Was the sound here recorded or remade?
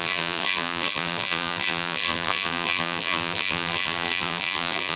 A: remade